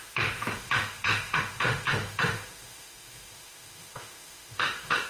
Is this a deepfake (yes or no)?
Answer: yes